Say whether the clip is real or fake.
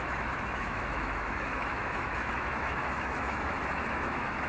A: fake